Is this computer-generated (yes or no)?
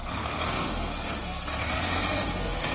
yes